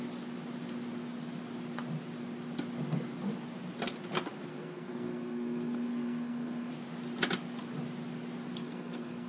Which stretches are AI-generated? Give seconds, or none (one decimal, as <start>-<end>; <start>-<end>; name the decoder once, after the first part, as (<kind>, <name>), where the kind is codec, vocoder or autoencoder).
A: 4.5-6.7 (codec, SNAC); 8.6-9.3